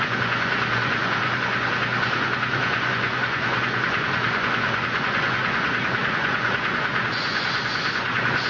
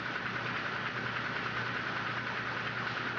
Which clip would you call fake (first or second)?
first